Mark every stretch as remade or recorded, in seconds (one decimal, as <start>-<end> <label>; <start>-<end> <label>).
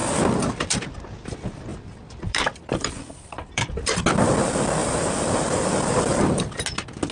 0.0-0.8 remade; 0.8-1.7 recorded; 1.7-3.7 remade; 3.7-4.8 recorded; 4.8-6.4 remade; 6.4-7.1 recorded